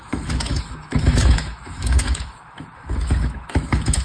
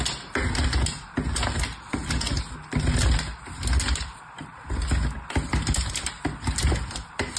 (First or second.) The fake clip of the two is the first